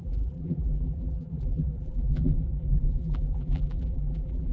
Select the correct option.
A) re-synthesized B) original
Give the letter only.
A